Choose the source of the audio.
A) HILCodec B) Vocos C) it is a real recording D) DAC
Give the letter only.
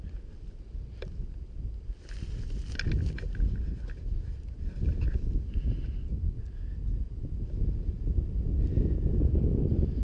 C